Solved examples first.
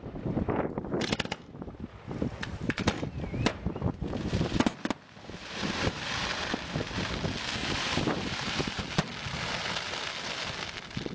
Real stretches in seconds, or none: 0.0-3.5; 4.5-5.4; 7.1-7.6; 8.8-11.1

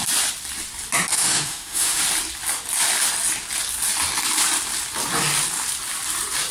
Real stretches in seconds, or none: 0.0-1.1; 2.0-6.5

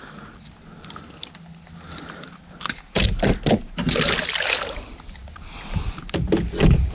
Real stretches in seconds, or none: 0.0-6.9

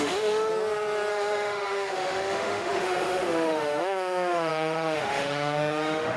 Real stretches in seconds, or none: 0.5-1.1

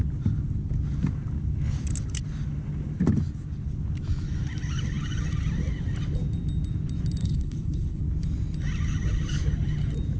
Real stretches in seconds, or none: 0.0-7.2; 8.0-10.2

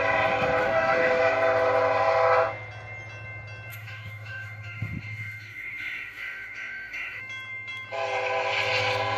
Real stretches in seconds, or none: 0.0-0.6; 1.2-3.7; 7.2-9.2

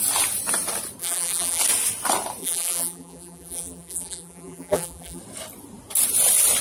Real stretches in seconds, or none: 0.0-1.0; 1.6-2.4; 5.2-6.6